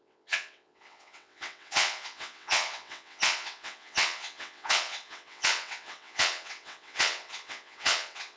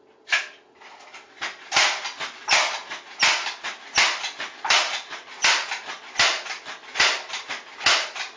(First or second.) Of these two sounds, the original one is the second